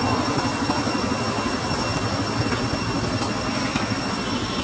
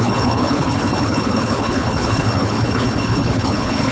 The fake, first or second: second